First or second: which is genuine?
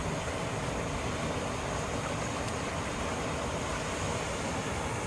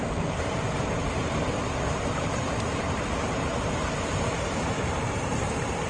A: first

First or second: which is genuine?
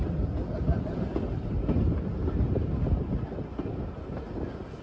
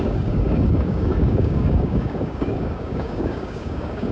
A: first